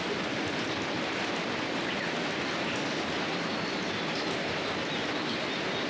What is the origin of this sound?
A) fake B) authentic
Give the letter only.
B